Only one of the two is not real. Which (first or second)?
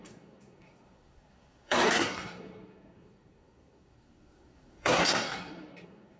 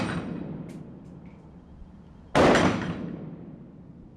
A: first